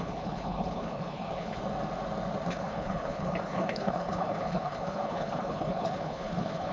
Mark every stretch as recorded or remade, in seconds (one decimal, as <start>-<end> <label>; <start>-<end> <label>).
0.0-1.6 remade; 1.6-2.5 recorded; 2.5-6.7 remade